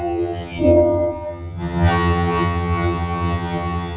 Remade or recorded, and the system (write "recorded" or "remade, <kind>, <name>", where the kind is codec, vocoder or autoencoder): remade, vocoder, HiFi-GAN